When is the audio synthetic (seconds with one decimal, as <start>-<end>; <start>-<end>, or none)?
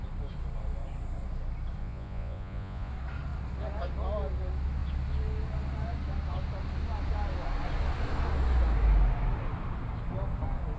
1.8-2.9